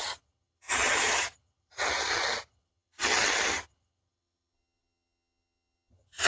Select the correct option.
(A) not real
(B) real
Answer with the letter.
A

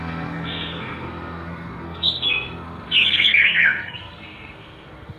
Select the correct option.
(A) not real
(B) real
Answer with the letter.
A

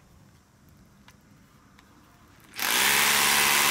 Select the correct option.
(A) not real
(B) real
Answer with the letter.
B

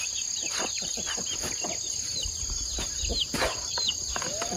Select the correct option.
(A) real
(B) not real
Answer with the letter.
B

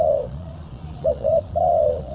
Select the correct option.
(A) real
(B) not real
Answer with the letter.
B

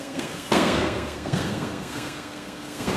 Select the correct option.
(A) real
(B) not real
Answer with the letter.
B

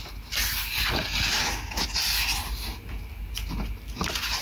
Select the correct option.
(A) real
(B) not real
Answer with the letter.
A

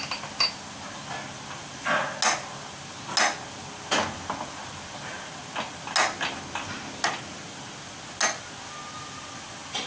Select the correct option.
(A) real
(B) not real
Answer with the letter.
A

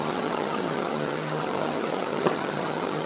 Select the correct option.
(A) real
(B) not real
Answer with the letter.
B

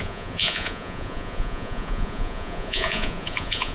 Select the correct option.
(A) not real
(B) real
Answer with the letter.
A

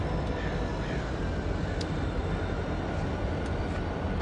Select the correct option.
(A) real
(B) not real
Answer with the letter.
A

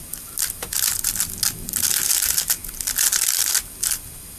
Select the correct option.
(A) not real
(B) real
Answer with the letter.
B